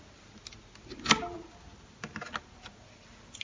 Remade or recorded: recorded